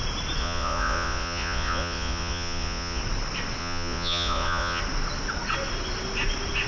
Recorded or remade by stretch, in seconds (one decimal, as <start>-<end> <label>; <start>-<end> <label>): 0.0-0.4 recorded; 0.4-3.0 remade; 3.0-3.6 recorded; 3.6-4.8 remade; 4.8-6.7 recorded

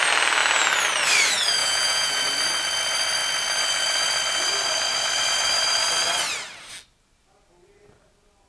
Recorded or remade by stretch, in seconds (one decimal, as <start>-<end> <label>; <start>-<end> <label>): 0.0-1.6 recorded; 1.6-2.2 remade; 2.2-8.5 recorded

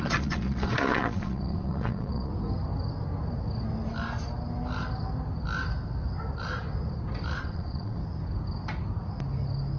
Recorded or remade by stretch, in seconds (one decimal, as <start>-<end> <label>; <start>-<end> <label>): 0.0-2.3 remade; 2.3-7.4 recorded; 7.4-8.0 remade; 8.0-9.8 recorded

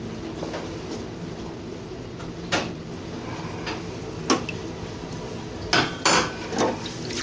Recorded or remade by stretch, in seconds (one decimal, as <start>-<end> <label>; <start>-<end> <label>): 0.0-7.2 recorded